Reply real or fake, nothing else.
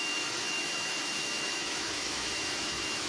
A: fake